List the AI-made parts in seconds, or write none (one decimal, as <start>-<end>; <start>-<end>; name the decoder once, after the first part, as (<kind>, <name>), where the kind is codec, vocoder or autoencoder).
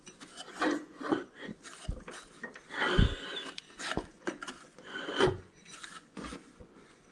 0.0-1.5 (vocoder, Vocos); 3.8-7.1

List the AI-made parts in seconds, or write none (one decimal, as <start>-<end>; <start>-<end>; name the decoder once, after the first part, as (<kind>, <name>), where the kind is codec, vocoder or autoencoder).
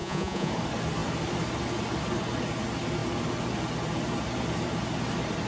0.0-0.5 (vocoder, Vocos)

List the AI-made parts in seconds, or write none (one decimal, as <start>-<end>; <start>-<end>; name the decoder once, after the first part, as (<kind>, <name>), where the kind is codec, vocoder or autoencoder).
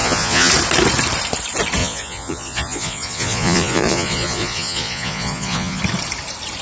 0.0-0.5 (vocoder, Vocos); 1.8-5.8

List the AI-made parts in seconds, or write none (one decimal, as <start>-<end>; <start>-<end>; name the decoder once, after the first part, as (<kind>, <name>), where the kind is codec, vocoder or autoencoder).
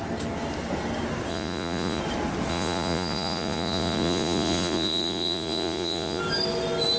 1.3-2.0 (vocoder, Vocos); 2.5-6.2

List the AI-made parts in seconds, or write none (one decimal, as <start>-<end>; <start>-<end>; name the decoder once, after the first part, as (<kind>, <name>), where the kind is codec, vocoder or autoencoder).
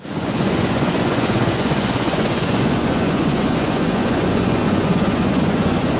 0.0-6.0 (vocoder, Vocos)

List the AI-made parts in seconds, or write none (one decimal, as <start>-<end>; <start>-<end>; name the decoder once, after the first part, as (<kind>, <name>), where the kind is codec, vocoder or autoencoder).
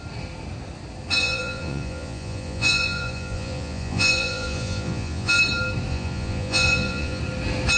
1.2-5.4 (vocoder, Vocos); 5.9-7.2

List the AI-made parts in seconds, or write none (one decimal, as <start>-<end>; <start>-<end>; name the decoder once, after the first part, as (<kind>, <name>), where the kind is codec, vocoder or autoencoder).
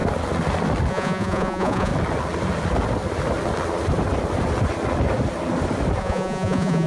0.9-1.9 (vocoder, Vocos); 6.0-6.9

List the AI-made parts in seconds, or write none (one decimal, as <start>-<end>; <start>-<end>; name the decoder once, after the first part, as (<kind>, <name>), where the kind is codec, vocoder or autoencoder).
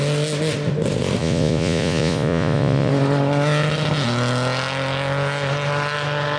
1.2-2.9 (vocoder, Vocos)